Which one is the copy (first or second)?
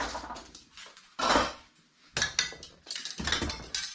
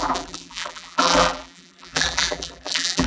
second